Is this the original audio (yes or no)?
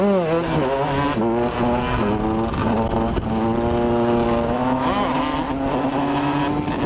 yes